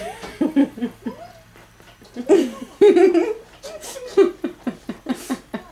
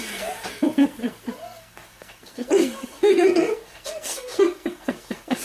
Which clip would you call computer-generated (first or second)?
second